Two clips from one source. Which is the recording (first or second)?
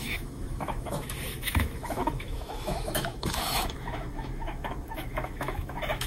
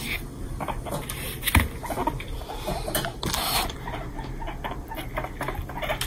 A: second